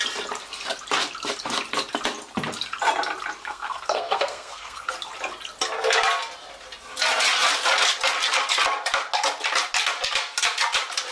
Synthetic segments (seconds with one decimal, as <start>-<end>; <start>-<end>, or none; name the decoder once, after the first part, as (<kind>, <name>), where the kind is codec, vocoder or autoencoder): 3.4-4.9 (codec, SNAC)